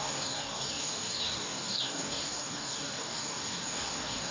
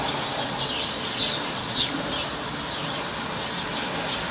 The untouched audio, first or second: second